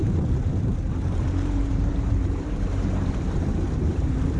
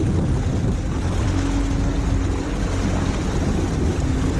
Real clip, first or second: second